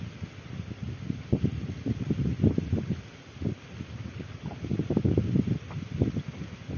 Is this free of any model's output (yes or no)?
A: yes